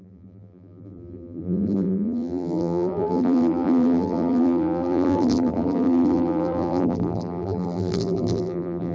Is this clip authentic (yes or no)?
no